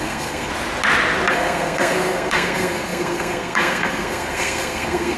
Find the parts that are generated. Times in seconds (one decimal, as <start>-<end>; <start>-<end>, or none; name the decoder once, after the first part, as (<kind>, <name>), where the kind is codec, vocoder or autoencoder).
0.0-0.5 (codec, SNAC); 1.3-5.2